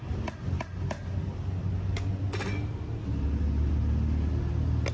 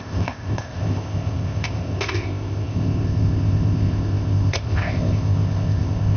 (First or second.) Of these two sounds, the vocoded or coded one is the second